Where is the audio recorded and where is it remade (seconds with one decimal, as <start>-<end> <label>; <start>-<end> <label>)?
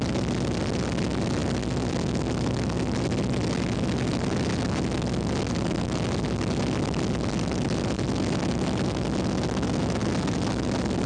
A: 0.0-11.1 recorded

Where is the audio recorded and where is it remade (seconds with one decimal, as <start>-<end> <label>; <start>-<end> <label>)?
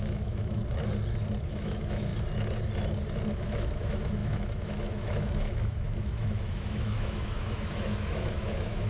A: 0.0-0.6 remade; 0.6-1.4 recorded; 1.4-2.1 remade; 2.1-3.3 recorded; 3.3-8.9 remade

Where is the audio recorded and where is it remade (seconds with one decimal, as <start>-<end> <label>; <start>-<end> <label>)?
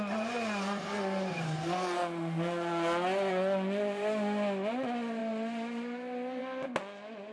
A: 0.0-7.3 recorded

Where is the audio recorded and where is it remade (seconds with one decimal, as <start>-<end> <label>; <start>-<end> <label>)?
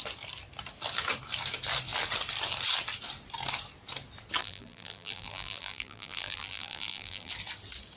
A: 0.0-4.4 recorded; 4.4-7.3 remade; 7.3-8.0 recorded